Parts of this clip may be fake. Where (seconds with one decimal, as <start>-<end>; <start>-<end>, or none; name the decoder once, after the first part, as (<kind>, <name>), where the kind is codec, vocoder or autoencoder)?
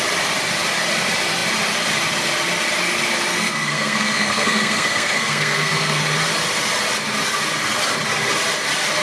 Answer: 3.3-6.0 (codec, SNAC)